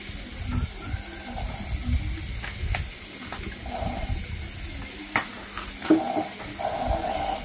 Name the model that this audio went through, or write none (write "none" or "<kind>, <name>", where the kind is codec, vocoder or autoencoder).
none